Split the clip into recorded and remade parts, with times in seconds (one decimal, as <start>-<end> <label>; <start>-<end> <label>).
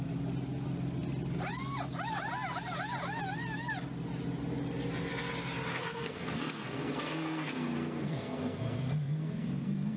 0.0-5.7 recorded; 5.7-10.0 remade